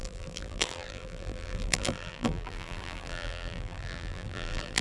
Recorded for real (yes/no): no